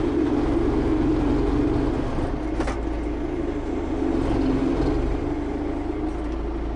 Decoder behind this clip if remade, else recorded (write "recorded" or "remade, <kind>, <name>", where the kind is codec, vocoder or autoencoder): recorded